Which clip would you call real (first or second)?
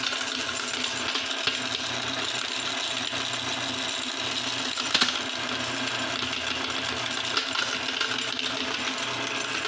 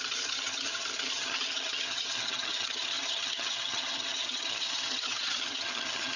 first